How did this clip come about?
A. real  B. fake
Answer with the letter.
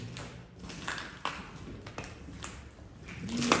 A